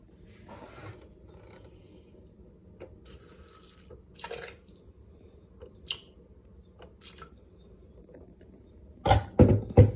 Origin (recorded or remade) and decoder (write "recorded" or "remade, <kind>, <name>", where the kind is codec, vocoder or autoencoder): recorded